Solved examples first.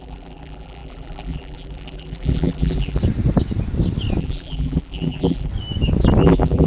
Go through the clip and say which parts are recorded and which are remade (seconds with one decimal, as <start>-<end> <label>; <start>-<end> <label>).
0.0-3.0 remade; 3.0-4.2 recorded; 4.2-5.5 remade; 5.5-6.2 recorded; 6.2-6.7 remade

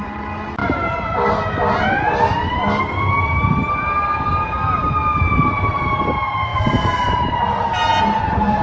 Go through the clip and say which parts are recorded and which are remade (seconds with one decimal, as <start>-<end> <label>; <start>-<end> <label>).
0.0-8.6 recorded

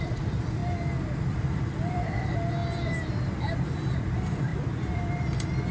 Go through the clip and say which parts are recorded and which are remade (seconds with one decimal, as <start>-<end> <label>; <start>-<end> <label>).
0.0-0.6 remade; 0.6-1.3 recorded; 1.3-2.6 remade; 2.6-4.1 recorded; 4.1-5.7 remade

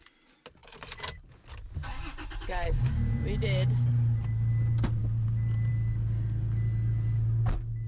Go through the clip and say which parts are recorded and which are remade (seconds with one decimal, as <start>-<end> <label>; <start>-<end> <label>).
0.0-0.6 recorded; 0.6-1.3 remade; 1.3-5.0 recorded; 5.0-5.7 remade; 5.7-7.9 recorded

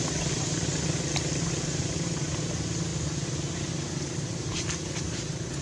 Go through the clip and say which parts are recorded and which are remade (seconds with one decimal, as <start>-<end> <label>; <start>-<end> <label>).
0.0-5.6 recorded

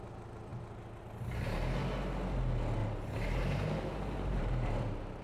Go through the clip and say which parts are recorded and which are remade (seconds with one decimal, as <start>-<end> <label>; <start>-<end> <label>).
0.0-2.8 recorded; 2.8-5.2 remade

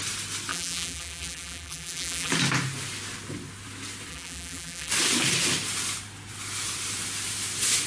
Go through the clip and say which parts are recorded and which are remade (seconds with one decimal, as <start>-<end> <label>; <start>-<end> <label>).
0.0-0.5 recorded; 0.5-2.3 remade; 2.3-4.1 recorded; 4.1-4.9 remade; 4.9-7.9 recorded

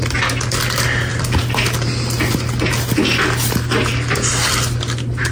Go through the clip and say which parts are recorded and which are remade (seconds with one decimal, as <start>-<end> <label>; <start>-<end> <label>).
0.0-5.3 recorded